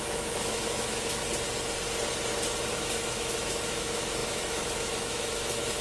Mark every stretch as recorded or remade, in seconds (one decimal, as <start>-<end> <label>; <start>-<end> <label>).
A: 0.0-1.2 remade; 1.2-2.7 recorded; 2.7-5.8 remade